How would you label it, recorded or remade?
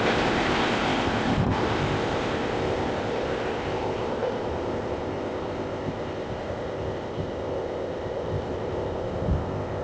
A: remade